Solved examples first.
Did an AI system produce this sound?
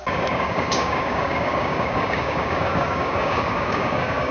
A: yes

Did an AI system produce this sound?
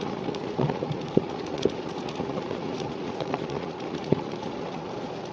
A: yes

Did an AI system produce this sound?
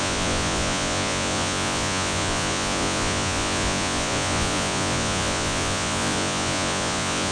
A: yes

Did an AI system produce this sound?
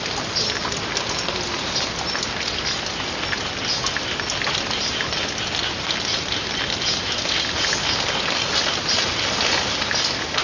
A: no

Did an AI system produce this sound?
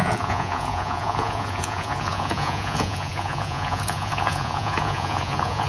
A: yes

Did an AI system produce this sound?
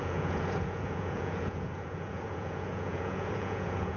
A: yes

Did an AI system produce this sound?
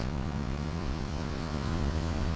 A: yes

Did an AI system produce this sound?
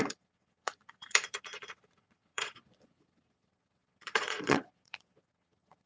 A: yes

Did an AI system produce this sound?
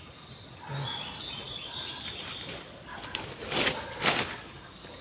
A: no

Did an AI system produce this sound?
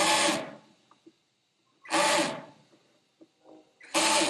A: no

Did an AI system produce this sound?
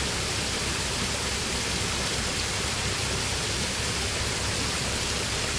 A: yes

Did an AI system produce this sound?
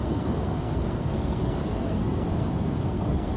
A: yes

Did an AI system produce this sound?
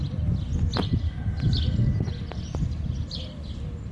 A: no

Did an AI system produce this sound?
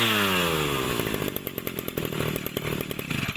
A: no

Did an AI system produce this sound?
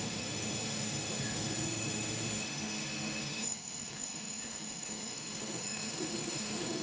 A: yes